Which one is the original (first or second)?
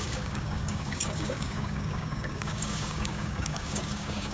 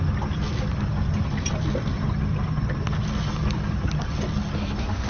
second